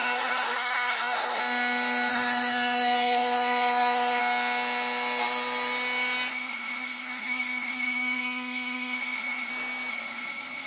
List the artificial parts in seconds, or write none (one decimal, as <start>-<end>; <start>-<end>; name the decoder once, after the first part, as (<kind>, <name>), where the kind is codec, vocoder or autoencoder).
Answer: 0.0-1.4 (codec, SNAC); 2.1-4.2; 6.3-9.5; 9.9-10.7